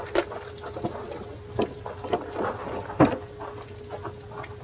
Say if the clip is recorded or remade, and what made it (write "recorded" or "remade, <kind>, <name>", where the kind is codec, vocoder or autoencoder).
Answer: recorded